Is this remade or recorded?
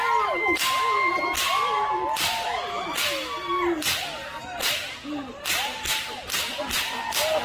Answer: recorded